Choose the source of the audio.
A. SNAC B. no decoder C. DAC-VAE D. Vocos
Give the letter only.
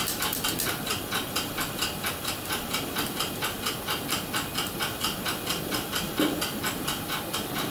B